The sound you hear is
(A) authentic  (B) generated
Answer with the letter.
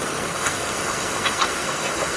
B